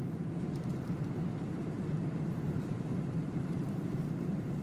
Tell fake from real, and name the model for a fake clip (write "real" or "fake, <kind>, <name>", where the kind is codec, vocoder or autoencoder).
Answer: fake, vocoder, BigVGAN v2